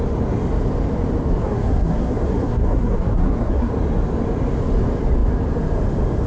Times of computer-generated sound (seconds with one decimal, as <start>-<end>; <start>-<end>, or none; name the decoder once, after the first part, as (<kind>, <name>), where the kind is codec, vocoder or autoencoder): 1.4-3.7 (codec, SNAC)